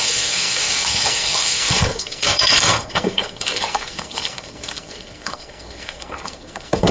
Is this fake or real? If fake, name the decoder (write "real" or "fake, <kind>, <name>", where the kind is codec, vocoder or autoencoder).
fake, codec, SNAC